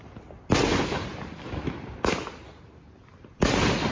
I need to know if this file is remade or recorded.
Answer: recorded